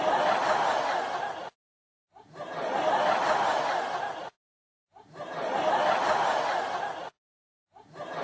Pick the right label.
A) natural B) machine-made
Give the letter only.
A